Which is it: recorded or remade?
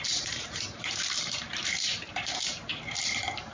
remade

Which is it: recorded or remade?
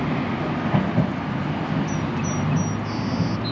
recorded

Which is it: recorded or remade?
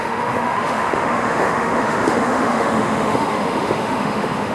remade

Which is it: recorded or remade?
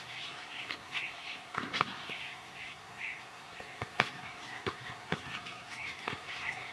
remade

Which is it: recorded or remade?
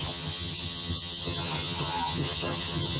remade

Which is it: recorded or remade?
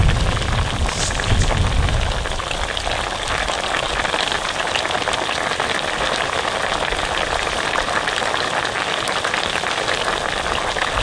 recorded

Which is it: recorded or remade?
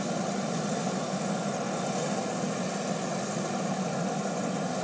recorded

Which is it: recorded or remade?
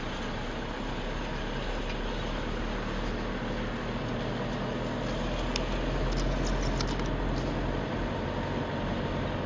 recorded